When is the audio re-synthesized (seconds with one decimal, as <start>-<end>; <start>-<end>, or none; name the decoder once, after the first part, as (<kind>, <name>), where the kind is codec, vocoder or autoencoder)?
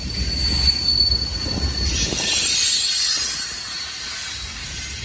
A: 0.0-0.4 (vocoder, BigVGAN v2); 1.0-2.6